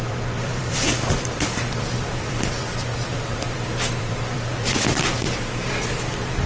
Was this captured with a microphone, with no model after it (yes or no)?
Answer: no